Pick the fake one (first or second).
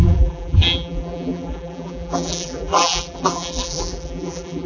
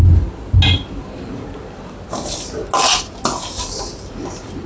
first